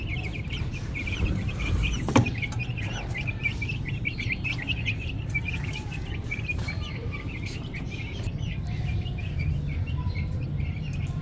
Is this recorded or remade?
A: remade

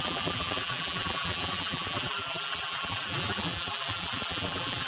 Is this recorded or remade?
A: remade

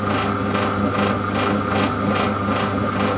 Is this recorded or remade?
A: recorded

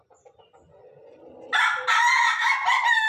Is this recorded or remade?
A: recorded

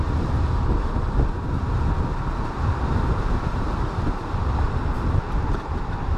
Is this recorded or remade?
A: recorded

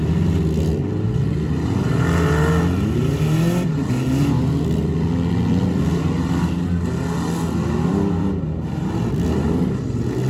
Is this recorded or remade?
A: recorded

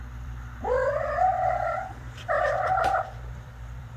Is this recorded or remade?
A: remade